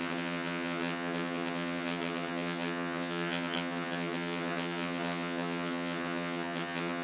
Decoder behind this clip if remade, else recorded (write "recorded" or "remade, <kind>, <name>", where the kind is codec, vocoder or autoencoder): remade, vocoder, HiFi-GAN